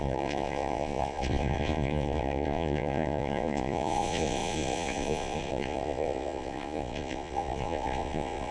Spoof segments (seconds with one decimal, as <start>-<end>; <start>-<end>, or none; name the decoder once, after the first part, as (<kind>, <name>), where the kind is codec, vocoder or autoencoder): 0.0-8.5 (vocoder, Vocos)